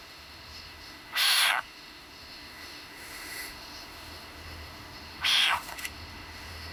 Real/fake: fake